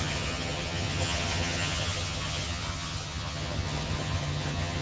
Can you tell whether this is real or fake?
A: fake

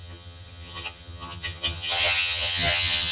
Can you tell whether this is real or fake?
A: fake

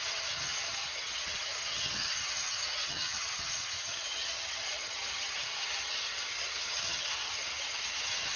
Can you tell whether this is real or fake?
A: fake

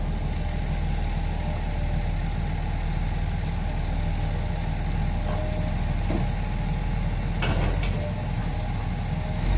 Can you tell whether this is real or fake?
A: real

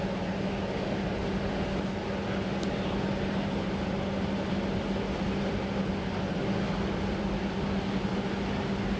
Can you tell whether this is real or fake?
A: real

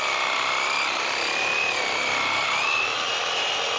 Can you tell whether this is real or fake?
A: real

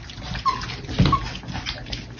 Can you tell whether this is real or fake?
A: real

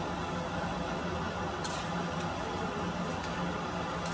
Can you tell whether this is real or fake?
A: real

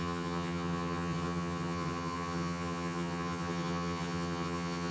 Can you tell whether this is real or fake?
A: fake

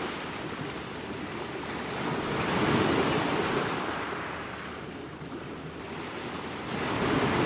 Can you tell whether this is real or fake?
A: real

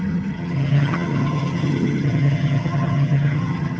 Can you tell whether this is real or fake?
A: fake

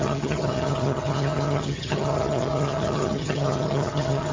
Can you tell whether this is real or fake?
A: fake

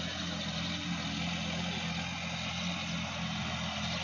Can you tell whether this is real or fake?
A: real